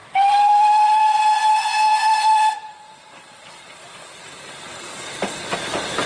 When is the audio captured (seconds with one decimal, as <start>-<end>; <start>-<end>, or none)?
1.5-1.9; 5.6-6.1